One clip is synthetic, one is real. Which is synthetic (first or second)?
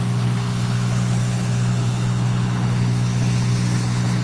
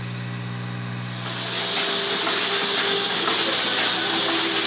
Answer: first